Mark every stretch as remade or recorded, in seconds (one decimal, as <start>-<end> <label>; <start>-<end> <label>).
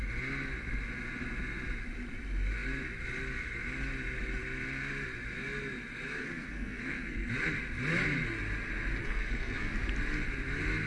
0.0-6.2 recorded; 6.2-7.3 remade; 7.3-9.0 recorded; 9.0-9.7 remade; 9.7-10.9 recorded